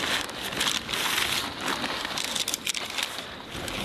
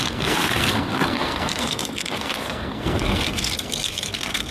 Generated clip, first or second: second